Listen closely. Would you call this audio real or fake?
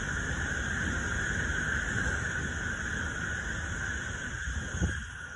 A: real